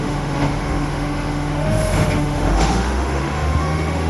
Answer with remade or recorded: remade